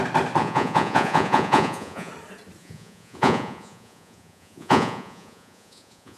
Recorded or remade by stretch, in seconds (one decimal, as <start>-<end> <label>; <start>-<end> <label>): 0.0-0.4 recorded; 0.4-2.1 remade; 2.1-2.6 recorded; 2.6-6.2 remade